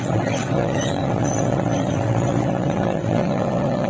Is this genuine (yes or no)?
no